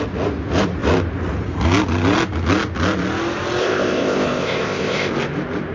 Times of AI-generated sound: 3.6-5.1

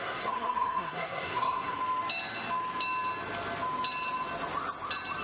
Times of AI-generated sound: 0.0-1.8

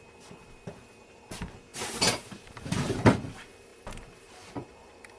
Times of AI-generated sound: 0.0-5.2

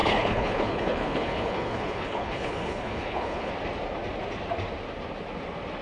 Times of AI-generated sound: 0.0-3.5